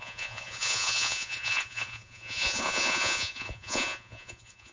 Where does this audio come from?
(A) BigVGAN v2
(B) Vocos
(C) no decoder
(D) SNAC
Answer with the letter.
B